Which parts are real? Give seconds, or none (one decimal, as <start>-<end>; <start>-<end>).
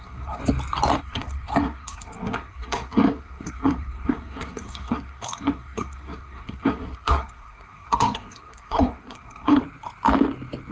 0.4-1.0; 9.6-10.7